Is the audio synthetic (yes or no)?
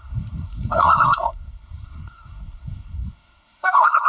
yes